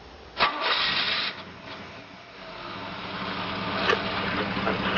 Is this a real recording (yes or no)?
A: yes